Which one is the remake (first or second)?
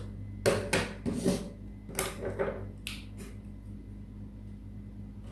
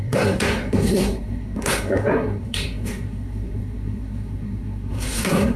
second